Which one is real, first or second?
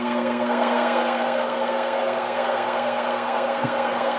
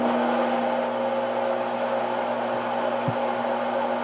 second